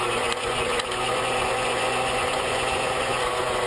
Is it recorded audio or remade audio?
remade